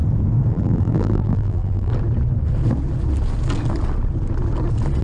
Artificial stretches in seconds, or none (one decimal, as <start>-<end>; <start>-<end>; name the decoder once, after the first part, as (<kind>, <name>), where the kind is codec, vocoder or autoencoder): 0.5-1.9 (vocoder, BigVGAN v2)

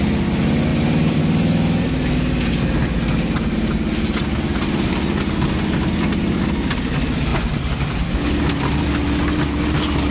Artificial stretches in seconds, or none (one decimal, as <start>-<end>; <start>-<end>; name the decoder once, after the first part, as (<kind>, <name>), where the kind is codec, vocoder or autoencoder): 0.7-1.2 (vocoder, BigVGAN v2)

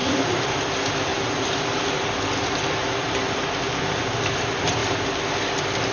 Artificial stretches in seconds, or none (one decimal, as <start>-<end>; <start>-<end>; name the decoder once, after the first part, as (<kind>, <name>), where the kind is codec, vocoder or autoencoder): 0.0-0.7 (vocoder, BigVGAN v2); 1.1-3.3

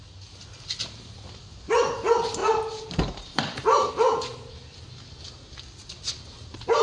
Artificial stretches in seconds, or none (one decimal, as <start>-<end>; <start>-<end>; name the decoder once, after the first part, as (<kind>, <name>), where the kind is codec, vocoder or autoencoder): 2.4-3.9 (vocoder, BigVGAN v2)

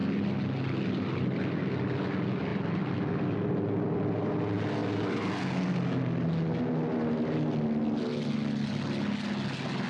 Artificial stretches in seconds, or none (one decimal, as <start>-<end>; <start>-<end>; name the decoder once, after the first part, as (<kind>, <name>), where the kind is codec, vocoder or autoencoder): none

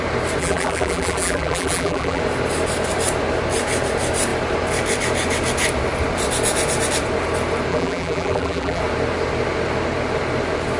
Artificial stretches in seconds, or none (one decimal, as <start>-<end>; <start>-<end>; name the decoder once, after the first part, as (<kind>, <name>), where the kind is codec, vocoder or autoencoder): 0.4-2.2 (vocoder, BigVGAN v2); 7.7-8.8

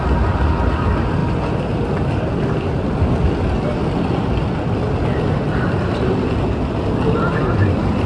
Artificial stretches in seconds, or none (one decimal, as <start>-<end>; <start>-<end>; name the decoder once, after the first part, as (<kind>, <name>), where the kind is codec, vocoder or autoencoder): none

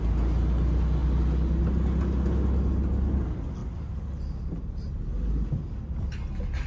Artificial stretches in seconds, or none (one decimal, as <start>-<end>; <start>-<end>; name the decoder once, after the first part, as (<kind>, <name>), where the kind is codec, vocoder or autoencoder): 3.6-4.7 (vocoder, BigVGAN v2)